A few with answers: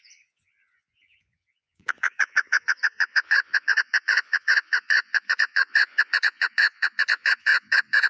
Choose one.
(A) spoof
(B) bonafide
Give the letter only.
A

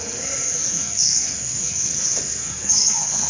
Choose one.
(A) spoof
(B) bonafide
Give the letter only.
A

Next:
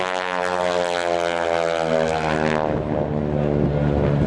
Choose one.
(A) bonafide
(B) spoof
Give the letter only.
A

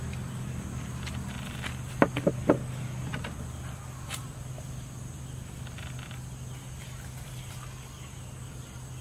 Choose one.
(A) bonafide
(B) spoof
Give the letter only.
A